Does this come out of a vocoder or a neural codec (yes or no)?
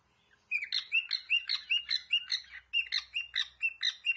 no